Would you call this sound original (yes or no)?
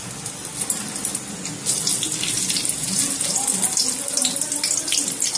yes